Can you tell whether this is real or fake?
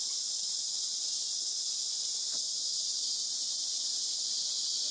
real